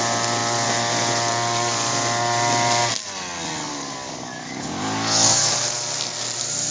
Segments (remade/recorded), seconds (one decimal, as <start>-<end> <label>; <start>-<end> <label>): 0.0-3.7 recorded; 3.7-5.5 remade; 5.5-6.7 recorded

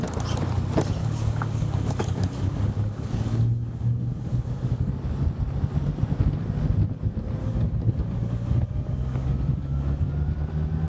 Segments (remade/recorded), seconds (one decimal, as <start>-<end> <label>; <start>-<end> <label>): 0.0-1.0 recorded; 1.0-4.9 remade; 4.9-7.4 recorded; 7.4-10.1 remade; 10.1-10.9 recorded

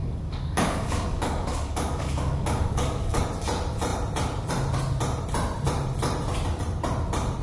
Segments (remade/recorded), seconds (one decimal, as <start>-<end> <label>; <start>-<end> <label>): 0.0-3.2 remade; 3.2-7.4 recorded

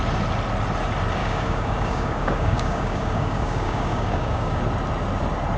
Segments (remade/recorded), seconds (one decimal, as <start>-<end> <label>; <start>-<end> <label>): 0.0-1.2 recorded; 1.2-4.6 remade; 4.6-5.6 recorded

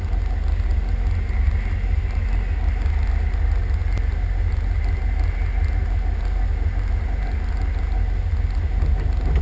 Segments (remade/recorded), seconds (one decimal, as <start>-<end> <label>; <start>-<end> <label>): 0.0-9.4 recorded

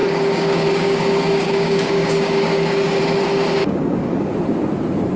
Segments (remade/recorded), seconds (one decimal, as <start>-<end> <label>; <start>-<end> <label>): 0.0-3.0 remade; 3.0-3.6 recorded; 3.6-4.3 remade; 4.3-5.2 recorded

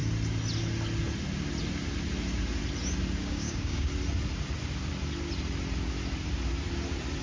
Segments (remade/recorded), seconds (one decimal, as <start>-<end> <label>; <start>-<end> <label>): 0.0-3.2 recorded; 3.2-3.9 remade; 3.9-7.2 recorded

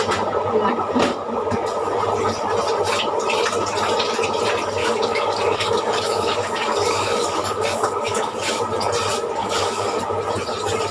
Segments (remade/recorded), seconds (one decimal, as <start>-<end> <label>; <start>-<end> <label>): 0.0-4.8 recorded; 4.8-8.6 remade; 8.6-9.4 recorded; 9.4-10.0 remade; 10.0-10.9 recorded